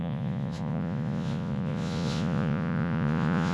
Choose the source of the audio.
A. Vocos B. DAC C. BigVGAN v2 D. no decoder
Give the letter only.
A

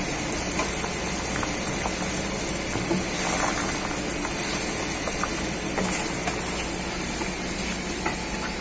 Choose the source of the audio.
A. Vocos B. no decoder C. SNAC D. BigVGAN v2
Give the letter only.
B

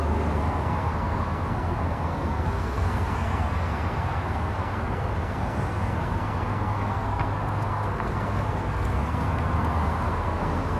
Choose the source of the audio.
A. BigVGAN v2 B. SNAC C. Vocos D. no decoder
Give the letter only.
B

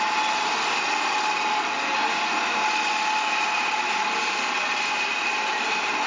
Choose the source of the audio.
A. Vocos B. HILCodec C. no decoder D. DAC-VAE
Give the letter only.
C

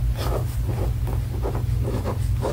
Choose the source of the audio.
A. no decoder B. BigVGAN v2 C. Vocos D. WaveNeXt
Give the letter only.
A